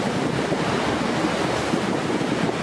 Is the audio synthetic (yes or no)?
no